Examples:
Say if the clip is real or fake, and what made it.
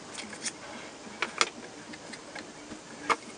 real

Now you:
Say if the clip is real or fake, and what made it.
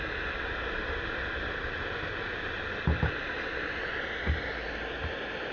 real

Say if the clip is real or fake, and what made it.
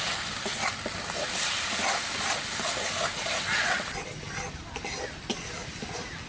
real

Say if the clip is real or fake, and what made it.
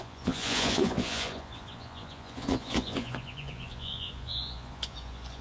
fake, vocoder, Vocos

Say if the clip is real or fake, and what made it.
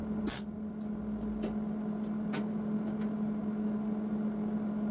real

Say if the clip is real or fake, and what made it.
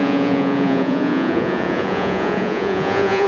fake, vocoder, Vocos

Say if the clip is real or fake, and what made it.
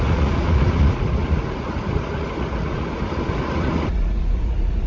fake, vocoder, Vocos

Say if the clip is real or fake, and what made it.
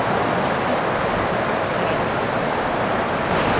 real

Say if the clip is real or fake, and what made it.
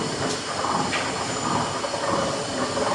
real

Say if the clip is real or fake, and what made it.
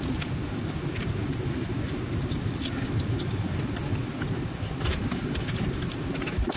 real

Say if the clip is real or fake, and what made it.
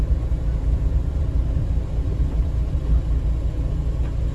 real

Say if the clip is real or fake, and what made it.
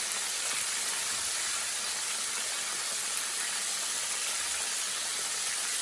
real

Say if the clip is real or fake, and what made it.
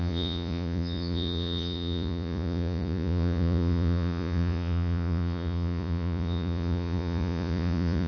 fake, vocoder, Vocos